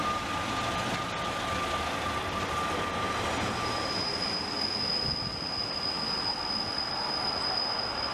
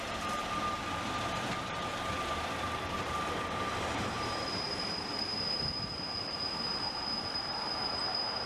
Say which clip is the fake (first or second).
second